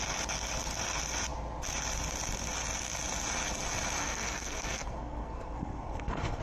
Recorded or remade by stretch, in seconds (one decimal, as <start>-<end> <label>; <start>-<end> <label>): 0.0-4.0 recorded; 4.0-6.4 remade

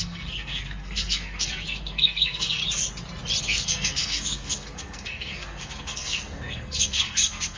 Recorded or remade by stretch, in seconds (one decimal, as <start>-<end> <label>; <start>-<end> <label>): 0.0-2.6 remade; 2.6-3.4 recorded; 3.4-7.6 remade

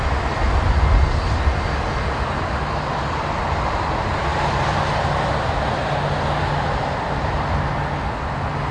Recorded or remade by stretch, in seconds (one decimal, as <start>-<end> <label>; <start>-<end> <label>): 0.0-8.7 recorded

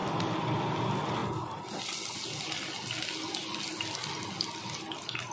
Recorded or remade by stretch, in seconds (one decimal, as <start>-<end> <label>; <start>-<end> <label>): 0.0-5.3 recorded